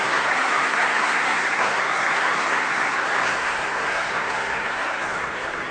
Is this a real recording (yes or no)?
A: no